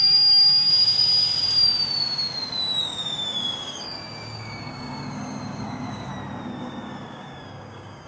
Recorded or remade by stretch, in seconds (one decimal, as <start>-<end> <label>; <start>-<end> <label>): 0.0-0.7 remade; 0.7-2.8 recorded; 2.8-6.1 remade; 6.1-6.6 recorded; 6.6-8.1 remade